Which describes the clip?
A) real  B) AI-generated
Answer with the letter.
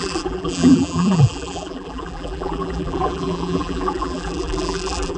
B